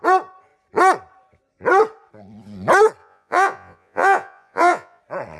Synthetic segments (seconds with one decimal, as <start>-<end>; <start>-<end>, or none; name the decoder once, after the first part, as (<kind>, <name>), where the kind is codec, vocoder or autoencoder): 3.0-5.0 (vocoder, Vocos)

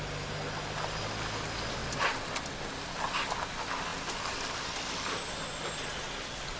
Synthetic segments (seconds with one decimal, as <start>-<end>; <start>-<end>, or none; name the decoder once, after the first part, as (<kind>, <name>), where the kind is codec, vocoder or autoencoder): none